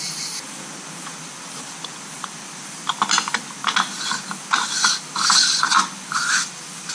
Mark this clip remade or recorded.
recorded